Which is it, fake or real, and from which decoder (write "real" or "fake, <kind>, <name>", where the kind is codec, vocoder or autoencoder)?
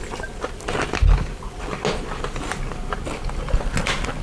real